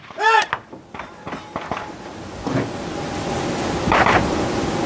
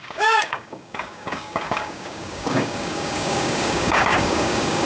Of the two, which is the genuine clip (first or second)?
first